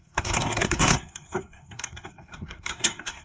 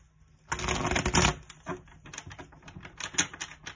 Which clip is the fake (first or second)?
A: first